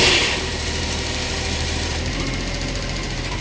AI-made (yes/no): yes